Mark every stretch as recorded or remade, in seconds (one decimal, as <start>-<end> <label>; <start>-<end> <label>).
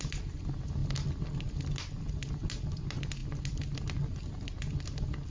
0.0-5.3 recorded